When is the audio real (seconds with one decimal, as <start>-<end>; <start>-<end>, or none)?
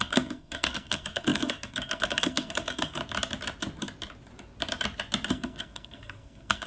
3.0-5.3